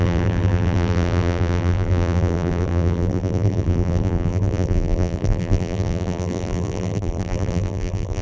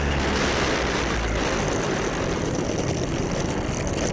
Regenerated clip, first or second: first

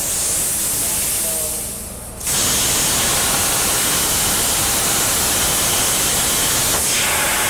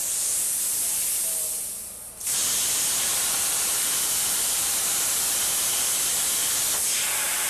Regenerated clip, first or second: second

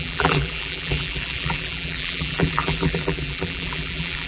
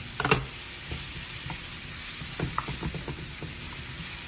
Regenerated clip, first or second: first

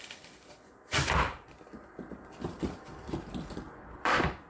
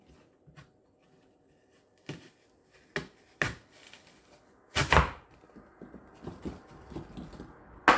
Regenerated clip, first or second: first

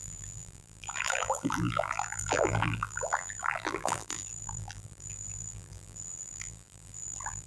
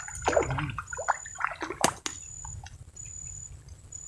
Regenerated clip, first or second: first